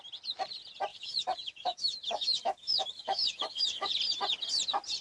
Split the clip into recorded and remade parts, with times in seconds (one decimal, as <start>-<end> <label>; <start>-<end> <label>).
0.0-0.9 recorded; 0.9-3.9 remade; 3.9-5.0 recorded